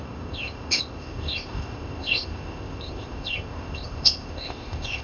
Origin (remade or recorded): remade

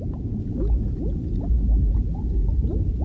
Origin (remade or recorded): remade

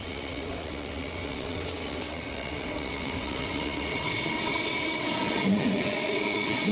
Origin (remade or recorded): remade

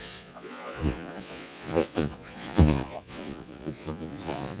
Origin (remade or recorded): remade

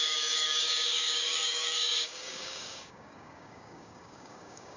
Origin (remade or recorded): remade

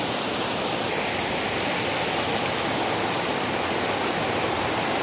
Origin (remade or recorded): recorded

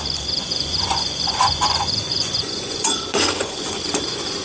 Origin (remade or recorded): remade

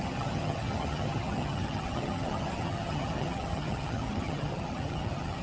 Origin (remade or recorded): remade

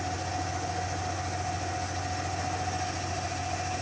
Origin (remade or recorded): recorded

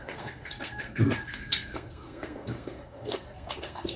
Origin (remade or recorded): remade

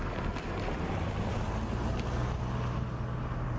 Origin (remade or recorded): recorded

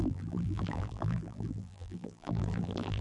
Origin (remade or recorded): remade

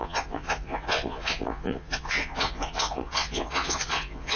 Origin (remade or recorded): remade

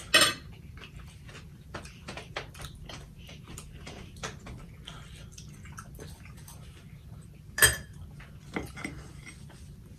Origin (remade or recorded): recorded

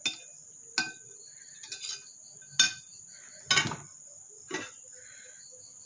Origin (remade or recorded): recorded